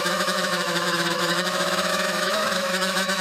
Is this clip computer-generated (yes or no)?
yes